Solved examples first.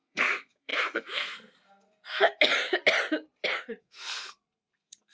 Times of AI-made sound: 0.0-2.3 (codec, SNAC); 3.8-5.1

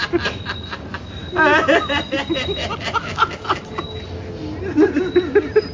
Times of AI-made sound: none